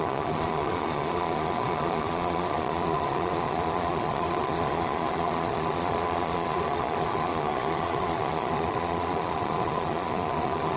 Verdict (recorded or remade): remade